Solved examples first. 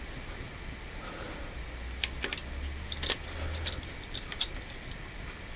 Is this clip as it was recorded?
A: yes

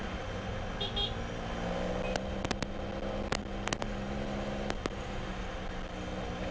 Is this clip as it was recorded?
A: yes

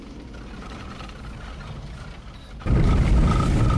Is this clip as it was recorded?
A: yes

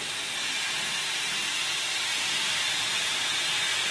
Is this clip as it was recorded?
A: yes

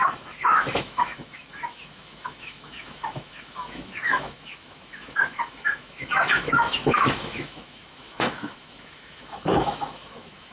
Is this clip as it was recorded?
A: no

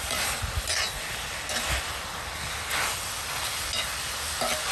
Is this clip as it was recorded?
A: yes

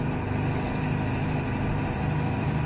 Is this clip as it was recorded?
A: yes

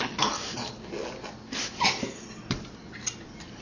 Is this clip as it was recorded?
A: yes